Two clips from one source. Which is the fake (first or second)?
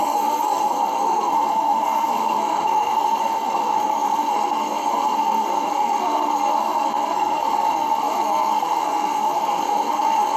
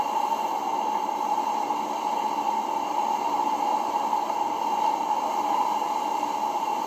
first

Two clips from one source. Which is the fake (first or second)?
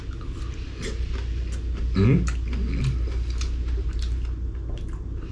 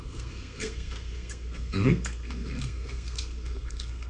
second